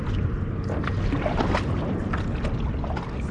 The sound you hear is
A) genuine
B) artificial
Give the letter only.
A